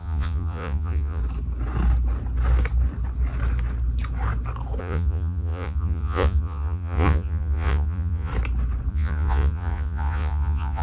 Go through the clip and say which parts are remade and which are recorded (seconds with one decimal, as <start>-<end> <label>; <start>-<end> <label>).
0.0-1.2 remade; 1.2-4.8 recorded; 4.8-8.3 remade; 8.3-8.9 recorded; 8.9-10.8 remade